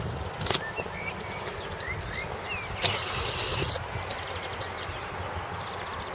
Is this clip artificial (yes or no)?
no